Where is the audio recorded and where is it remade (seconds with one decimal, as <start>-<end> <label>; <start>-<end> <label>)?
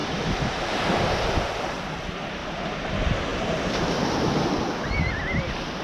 0.0-1.3 remade; 1.3-2.4 recorded; 2.4-2.9 remade; 2.9-5.8 recorded